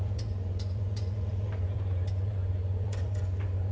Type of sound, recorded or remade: remade